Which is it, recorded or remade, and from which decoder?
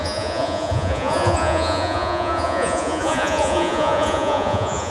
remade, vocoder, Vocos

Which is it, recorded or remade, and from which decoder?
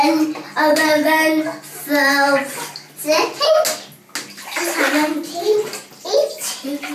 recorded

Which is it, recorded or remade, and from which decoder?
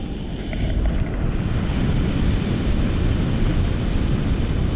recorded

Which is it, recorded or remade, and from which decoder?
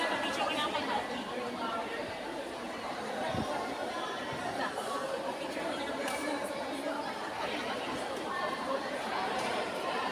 remade, vocoder, BigVGAN v2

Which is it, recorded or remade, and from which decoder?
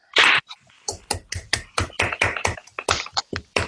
remade, vocoder, BigVGAN v2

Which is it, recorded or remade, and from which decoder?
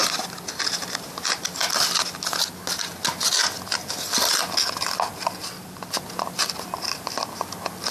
recorded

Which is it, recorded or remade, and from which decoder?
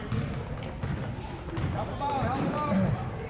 recorded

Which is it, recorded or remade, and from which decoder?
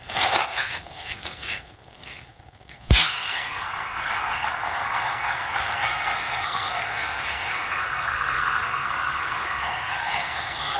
remade, codec, SNAC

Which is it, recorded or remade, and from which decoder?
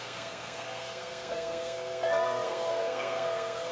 remade, codec, SNAC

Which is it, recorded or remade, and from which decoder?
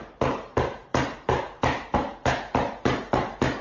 recorded